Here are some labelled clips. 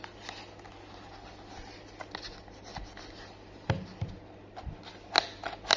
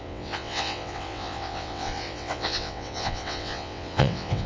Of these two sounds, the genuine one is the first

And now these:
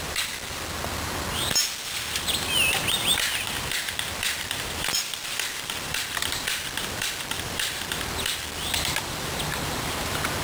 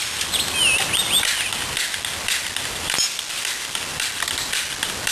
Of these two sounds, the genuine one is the second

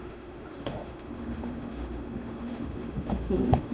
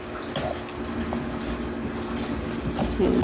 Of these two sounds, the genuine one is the second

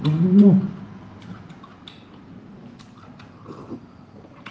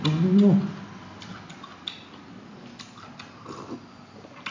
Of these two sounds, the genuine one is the second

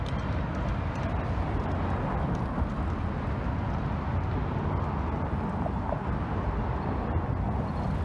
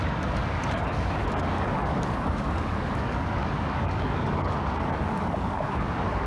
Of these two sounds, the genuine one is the first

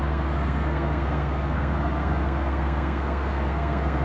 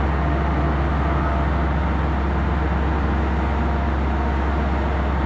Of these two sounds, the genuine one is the second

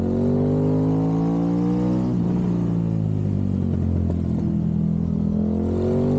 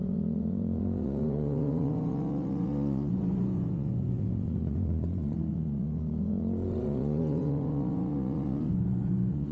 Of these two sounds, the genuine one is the first